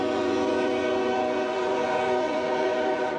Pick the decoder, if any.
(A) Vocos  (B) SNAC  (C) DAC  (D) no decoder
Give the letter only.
A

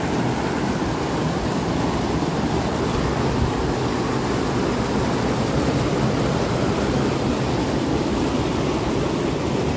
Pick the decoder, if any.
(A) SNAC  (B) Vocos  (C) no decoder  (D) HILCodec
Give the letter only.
C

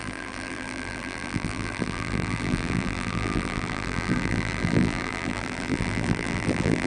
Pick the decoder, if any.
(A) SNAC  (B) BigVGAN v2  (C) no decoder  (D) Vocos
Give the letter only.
B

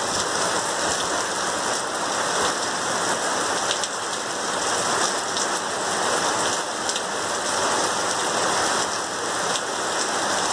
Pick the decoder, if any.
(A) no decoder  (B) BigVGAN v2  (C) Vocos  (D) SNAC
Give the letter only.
A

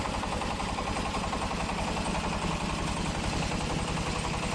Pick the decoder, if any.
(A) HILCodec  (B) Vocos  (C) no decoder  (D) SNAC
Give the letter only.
C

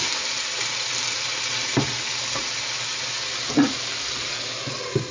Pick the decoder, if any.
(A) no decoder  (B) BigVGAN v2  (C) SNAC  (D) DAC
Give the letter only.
A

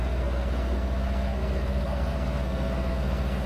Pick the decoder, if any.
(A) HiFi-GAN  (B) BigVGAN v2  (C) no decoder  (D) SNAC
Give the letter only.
D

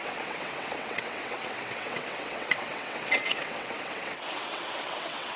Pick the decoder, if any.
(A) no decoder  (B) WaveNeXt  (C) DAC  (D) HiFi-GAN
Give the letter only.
B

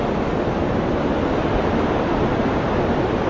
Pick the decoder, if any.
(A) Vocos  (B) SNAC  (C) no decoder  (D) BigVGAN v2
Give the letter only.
C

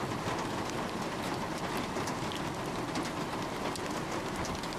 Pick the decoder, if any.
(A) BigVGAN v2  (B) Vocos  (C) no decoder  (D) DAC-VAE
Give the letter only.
C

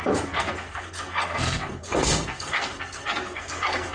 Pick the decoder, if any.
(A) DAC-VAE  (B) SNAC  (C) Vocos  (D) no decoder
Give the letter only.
B